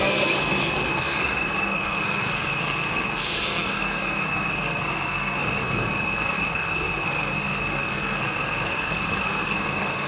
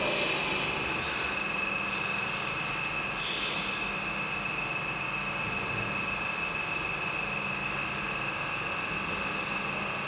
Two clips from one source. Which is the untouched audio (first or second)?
second